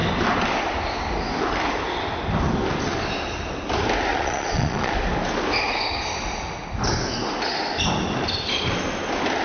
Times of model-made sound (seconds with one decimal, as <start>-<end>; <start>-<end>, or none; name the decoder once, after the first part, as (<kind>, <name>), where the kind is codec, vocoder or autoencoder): 4.1-4.9 (vocoder, Vocos)